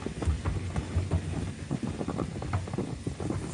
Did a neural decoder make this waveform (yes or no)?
no